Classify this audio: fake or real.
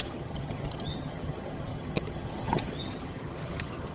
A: fake